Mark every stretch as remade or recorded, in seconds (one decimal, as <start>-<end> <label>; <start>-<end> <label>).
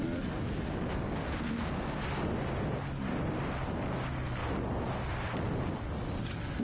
0.0-6.6 recorded